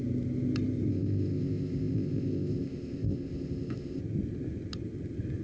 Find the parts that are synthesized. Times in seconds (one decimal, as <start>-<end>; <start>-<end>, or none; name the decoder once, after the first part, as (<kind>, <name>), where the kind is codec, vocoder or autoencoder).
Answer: 0.9-4.0 (codec, ZipCodec)